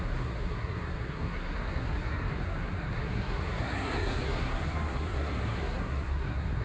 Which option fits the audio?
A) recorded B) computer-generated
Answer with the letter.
B